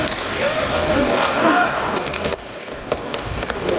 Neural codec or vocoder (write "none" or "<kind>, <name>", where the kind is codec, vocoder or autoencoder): codec, DAC